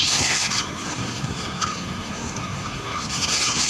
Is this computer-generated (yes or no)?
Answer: yes